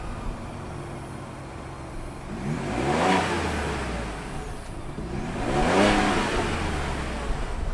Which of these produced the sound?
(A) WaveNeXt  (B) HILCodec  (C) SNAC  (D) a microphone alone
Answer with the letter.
D